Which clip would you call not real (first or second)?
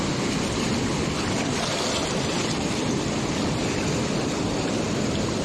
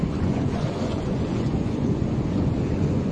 second